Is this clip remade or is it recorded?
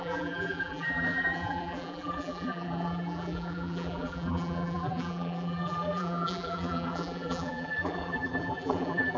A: remade